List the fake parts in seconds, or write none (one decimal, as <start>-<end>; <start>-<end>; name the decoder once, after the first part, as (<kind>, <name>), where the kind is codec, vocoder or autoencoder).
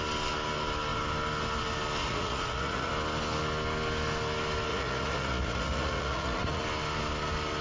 2.0-2.9 (vocoder, Vocos); 4.7-6.6